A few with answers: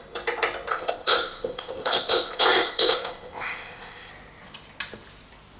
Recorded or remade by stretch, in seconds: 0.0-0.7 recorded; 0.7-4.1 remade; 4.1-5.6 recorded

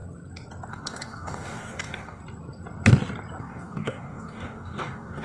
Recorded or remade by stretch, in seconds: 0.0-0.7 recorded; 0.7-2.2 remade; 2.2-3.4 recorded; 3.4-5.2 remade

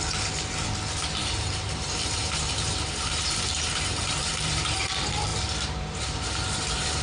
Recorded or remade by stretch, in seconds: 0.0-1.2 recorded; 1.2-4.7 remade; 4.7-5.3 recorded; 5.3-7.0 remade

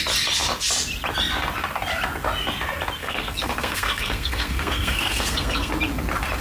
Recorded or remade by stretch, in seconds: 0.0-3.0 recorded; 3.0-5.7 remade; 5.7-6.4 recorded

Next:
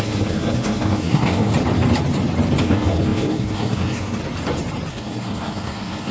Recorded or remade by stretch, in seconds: 0.0-1.5 remade; 1.5-2.6 recorded; 2.6-4.2 remade; 4.2-4.9 recorded; 4.9-6.1 remade